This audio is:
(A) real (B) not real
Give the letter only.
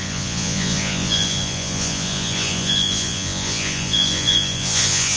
B